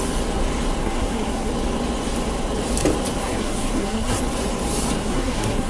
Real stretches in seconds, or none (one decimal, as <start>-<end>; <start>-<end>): 0.0-0.8; 1.5-3.2; 4.2-5.0